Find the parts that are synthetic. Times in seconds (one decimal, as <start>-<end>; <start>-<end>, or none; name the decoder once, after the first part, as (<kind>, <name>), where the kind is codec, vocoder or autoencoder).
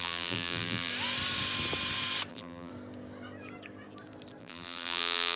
0.0-0.9 (vocoder, BigVGAN v2); 2.3-2.7; 4.4-5.4